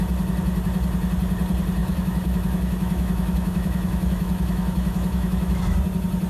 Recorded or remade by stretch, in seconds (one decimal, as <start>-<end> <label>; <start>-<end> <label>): 0.0-1.8 recorded; 1.8-5.6 remade; 5.6-6.3 recorded